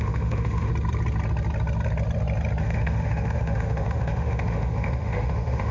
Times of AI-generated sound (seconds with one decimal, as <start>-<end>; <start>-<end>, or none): 0.0-0.7; 2.6-5.7

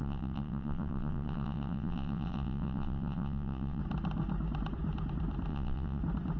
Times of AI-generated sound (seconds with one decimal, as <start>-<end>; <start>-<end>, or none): 0.0-3.8; 5.5-6.0

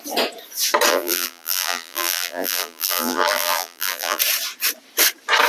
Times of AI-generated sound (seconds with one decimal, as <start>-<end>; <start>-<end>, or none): 0.9-4.2

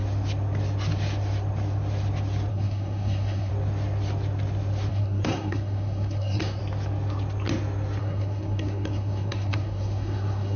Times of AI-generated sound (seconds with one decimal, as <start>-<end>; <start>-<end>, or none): 2.5-3.5; 4.9-6.6; 8.0-10.6

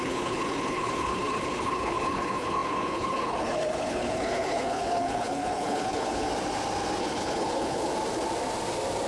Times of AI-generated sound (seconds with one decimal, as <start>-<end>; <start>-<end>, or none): 0.0-6.3; 7.0-7.9